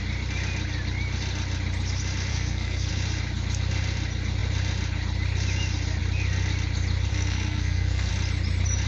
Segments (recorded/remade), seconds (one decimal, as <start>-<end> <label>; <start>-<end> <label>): 0.0-2.3 recorded; 2.3-2.9 remade; 2.9-7.1 recorded; 7.1-8.1 remade; 8.1-8.9 recorded